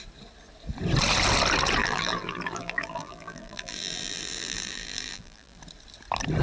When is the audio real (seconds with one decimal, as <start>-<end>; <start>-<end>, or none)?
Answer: 0.0-1.8; 5.6-6.4